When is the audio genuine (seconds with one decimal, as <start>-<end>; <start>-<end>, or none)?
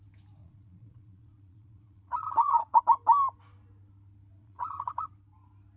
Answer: 0.0-0.4; 2.8-4.4; 5.1-5.8